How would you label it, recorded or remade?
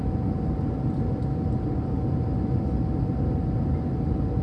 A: recorded